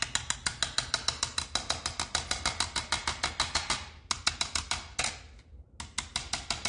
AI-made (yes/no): no